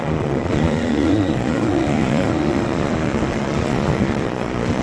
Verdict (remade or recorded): remade